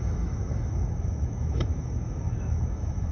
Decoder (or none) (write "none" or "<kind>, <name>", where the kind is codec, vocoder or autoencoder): autoencoder, DAC-VAE